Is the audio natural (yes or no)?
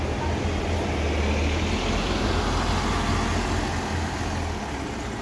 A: yes